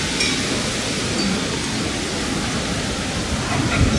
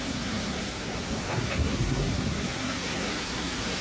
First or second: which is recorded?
first